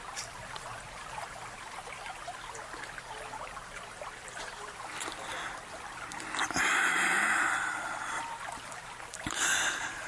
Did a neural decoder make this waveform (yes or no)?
no